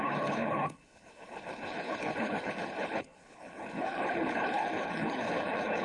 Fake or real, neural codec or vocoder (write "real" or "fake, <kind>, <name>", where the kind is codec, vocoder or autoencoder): fake, codec, HILCodec